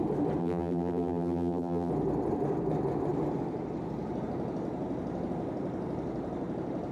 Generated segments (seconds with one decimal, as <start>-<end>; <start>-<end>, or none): 0.4-1.9

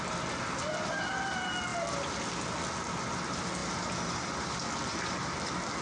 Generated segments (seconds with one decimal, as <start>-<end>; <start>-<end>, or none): none